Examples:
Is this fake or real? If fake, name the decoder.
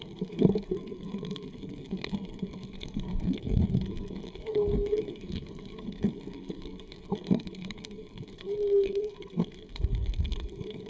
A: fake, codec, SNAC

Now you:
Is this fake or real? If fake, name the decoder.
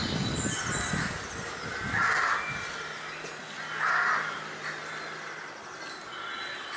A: real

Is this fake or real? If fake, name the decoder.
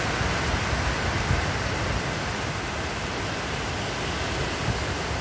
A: real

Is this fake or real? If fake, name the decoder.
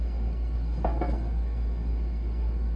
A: fake, codec, SNAC